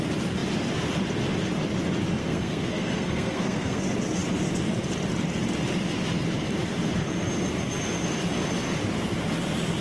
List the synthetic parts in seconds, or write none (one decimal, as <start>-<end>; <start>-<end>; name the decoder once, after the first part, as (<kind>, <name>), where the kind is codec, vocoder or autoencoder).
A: 2.2-3.8 (codec, SNAC)